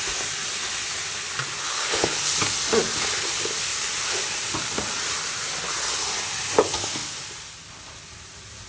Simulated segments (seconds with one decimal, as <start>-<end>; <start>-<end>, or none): 1.6-2.2